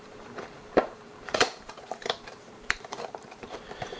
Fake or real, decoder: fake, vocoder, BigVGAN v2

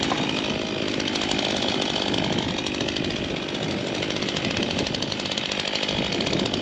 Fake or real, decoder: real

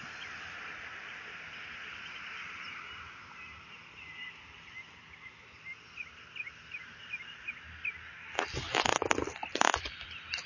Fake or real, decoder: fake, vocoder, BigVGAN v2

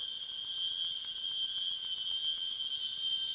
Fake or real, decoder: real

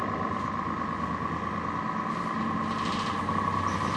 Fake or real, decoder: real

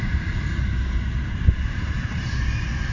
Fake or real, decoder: fake, vocoder, BigVGAN v2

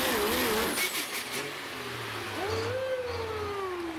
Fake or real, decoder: real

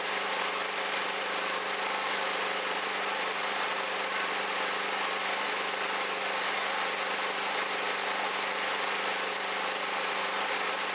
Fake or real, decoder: real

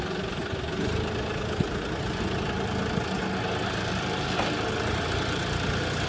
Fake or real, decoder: real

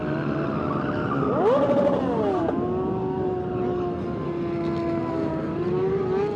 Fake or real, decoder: real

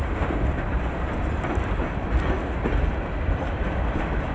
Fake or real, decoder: fake, vocoder, BigVGAN v2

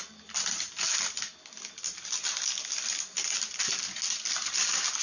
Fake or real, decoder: real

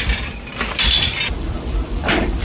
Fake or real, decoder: fake, vocoder, BigVGAN v2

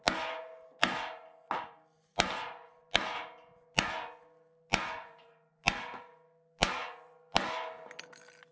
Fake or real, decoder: real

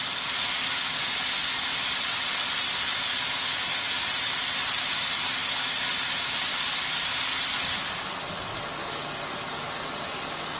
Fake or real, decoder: real